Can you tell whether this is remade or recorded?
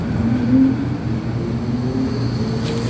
recorded